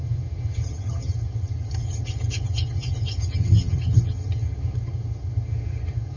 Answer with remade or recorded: remade